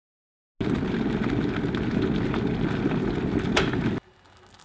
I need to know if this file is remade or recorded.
recorded